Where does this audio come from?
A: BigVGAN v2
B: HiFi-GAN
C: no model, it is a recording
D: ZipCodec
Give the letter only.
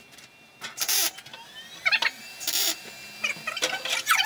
C